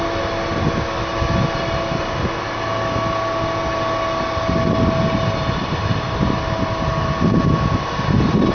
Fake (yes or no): no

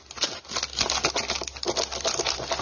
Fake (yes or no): no